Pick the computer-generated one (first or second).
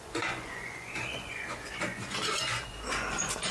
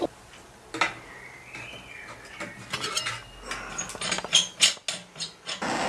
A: first